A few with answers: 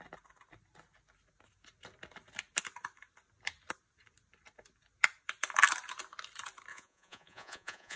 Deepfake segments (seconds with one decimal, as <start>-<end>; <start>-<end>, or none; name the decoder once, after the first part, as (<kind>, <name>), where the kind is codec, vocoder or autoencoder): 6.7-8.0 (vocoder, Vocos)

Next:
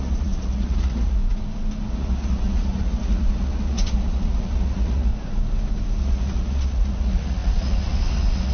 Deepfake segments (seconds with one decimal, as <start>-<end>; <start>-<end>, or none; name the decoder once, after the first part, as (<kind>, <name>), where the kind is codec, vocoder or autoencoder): 0.0-1.2 (vocoder, Vocos); 1.9-5.1; 6.0-8.5

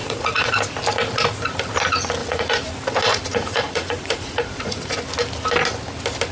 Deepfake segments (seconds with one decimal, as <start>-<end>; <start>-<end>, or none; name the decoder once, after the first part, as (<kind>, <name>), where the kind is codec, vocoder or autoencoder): 0.0-0.5 (vocoder, Vocos); 2.2-2.7; 3.1-5.0

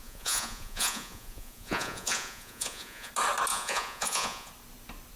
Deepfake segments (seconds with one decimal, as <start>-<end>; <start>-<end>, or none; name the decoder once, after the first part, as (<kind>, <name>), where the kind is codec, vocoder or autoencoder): 0.0-3.1 (vocoder, Vocos); 3.5-4.5

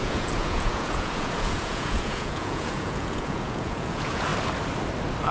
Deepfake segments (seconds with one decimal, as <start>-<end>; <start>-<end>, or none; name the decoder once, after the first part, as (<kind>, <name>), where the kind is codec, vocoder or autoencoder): 0.0-4.3 (vocoder, Vocos)